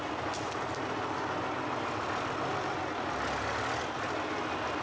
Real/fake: real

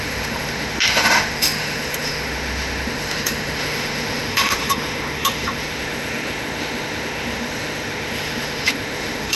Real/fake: fake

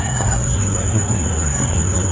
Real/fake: fake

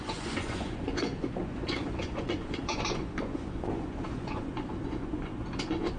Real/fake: fake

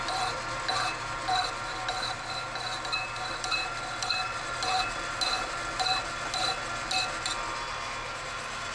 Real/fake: real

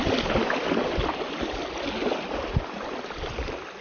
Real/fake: real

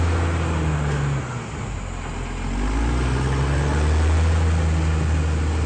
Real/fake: real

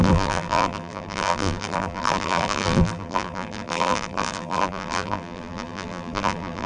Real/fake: fake